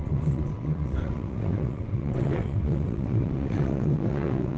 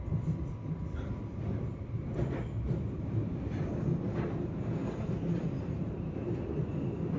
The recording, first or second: second